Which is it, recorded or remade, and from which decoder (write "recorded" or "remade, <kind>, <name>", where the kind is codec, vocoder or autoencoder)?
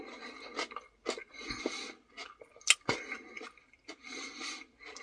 recorded